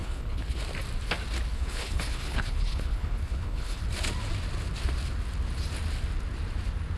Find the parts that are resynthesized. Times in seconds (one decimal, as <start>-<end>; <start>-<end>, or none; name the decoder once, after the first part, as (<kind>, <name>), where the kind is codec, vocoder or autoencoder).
0.0-0.6 (codec, HILCodec); 1.5-3.8